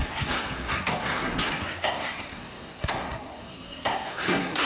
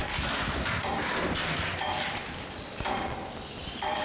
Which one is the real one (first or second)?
second